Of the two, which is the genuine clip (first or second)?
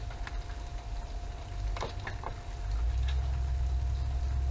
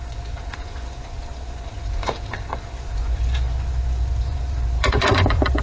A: first